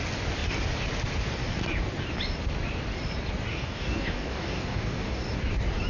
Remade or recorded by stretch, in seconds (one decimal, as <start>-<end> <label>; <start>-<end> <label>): 0.0-3.5 recorded; 3.5-5.2 remade; 5.2-5.9 recorded